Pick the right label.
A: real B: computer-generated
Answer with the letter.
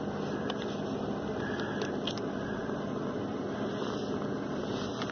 A